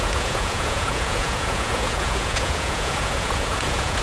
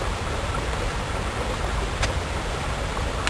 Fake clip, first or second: first